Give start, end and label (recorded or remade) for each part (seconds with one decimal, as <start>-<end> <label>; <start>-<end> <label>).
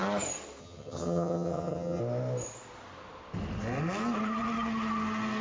0.0-0.6 recorded; 0.6-2.0 remade; 2.0-5.4 recorded